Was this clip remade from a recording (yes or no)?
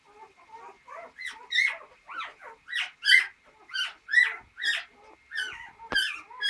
no